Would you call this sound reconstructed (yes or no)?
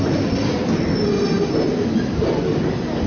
no